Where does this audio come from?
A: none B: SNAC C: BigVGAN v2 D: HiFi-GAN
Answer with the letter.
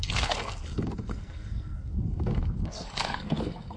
B